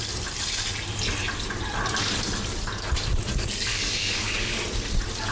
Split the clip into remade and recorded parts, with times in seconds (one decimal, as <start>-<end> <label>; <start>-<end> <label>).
0.0-3.7 recorded; 3.7-4.6 remade; 4.6-5.3 recorded